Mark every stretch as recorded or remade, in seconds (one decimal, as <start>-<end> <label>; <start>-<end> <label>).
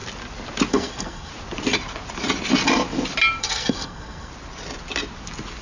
0.0-0.7 recorded; 0.7-1.3 remade; 1.3-3.4 recorded; 3.4-4.3 remade; 4.3-5.6 recorded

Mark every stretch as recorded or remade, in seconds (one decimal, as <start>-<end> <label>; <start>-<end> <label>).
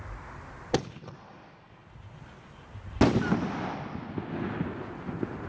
0.0-5.5 recorded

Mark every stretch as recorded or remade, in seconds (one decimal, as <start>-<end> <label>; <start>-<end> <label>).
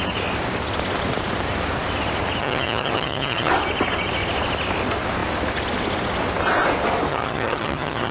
0.0-2.4 recorded; 2.4-3.5 remade; 3.5-7.1 recorded; 7.1-8.1 remade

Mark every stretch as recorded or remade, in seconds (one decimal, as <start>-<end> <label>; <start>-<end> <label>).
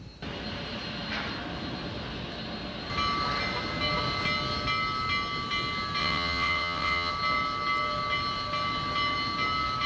0.0-6.0 recorded; 6.0-7.1 remade; 7.1-9.9 recorded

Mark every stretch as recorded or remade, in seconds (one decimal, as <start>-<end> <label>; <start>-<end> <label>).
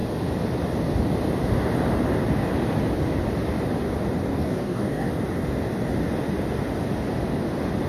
0.0-4.3 recorded; 4.3-5.1 remade; 5.1-7.9 recorded